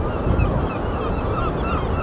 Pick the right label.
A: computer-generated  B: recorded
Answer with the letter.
B